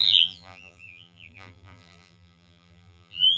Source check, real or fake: fake